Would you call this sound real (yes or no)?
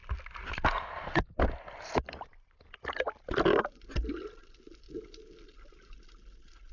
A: yes